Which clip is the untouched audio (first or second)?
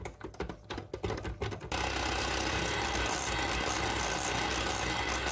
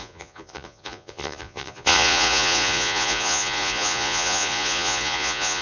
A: first